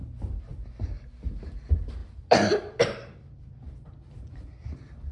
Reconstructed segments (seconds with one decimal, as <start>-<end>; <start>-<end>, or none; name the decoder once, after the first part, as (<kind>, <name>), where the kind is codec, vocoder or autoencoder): none